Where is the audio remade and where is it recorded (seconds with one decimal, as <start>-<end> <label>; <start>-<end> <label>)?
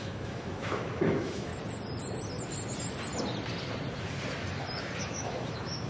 0.0-1.5 remade; 1.5-5.0 recorded; 5.0-5.9 remade